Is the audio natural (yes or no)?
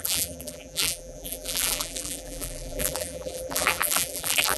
no